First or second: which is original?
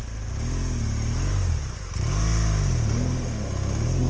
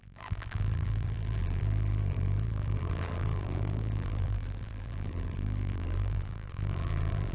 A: first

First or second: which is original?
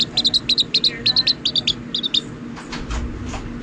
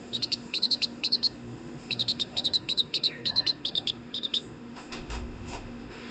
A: first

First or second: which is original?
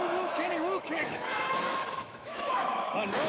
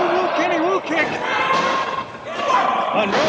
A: second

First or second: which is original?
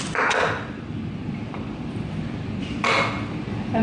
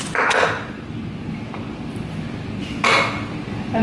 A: second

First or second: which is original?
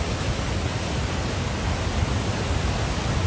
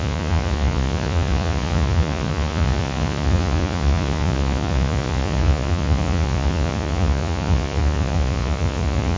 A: first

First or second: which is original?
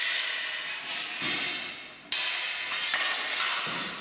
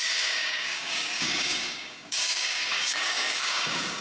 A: first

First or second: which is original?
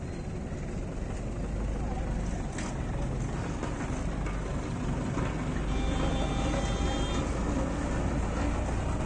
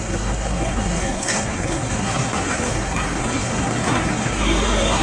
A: first